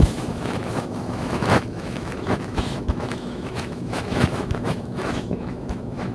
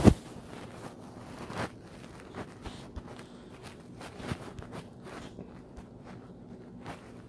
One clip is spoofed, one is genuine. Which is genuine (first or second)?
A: second